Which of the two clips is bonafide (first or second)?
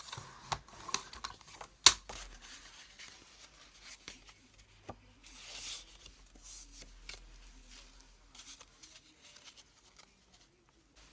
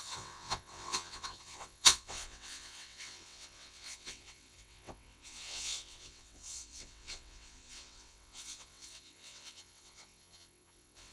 first